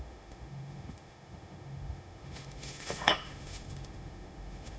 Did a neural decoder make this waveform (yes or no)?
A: yes